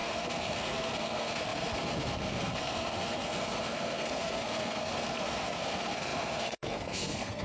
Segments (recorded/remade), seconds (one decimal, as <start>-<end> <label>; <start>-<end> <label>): 0.0-7.4 remade